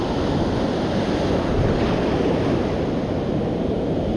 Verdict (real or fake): real